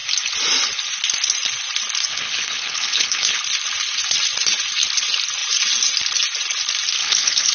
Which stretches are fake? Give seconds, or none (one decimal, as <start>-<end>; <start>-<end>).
2.1-3.4; 7.0-7.5